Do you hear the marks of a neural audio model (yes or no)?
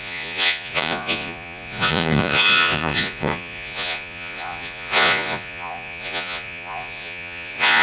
yes